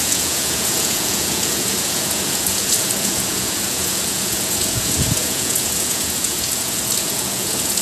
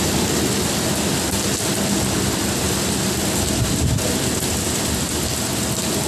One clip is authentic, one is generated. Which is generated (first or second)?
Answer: first